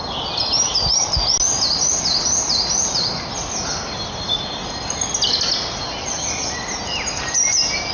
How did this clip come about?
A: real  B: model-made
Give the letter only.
A